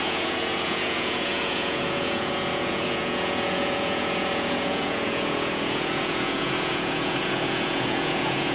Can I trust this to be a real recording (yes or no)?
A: no